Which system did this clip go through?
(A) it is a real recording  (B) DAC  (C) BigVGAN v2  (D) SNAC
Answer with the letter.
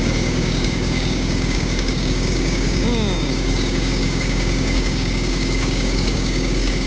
B